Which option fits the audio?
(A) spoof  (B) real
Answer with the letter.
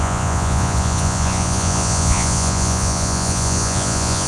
A